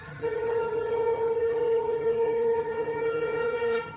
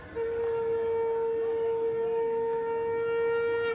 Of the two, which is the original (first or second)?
second